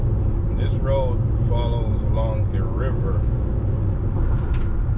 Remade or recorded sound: recorded